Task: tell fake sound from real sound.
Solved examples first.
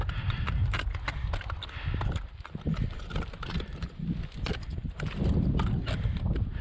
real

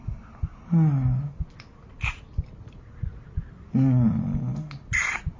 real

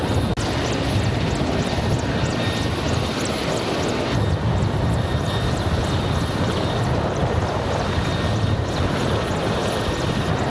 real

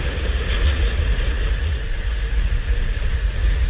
fake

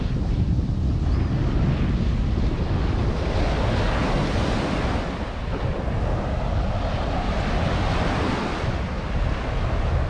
real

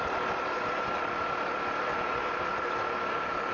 real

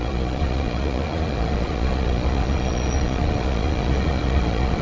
fake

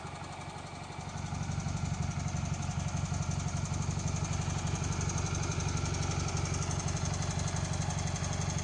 real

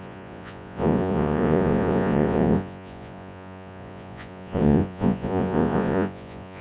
fake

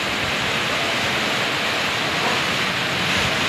real